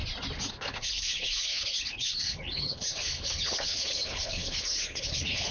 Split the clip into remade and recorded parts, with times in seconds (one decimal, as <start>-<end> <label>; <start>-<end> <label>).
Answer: 0.0-0.5 recorded; 0.5-5.5 remade